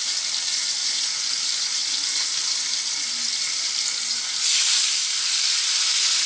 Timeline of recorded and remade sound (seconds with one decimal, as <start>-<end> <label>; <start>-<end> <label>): 0.0-6.3 recorded